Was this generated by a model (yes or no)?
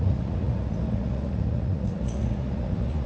yes